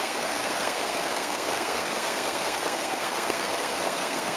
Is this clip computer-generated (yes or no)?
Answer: yes